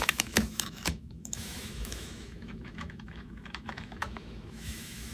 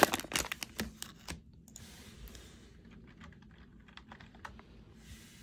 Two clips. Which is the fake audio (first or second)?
first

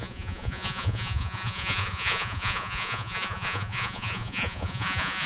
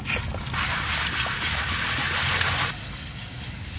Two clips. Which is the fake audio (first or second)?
first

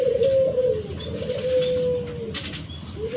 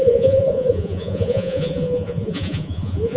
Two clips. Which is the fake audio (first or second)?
second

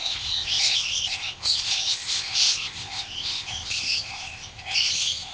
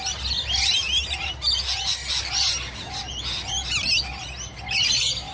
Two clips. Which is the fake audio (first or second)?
first